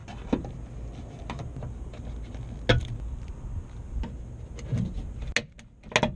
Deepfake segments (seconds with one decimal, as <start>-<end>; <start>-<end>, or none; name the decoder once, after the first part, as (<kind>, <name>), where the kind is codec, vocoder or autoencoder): none